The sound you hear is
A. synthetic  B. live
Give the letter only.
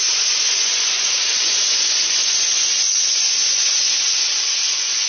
A